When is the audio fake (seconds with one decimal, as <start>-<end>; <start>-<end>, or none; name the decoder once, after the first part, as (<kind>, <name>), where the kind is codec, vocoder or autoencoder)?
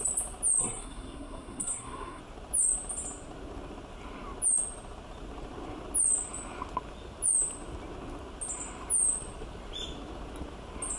0.6-2.2 (codec, SNAC)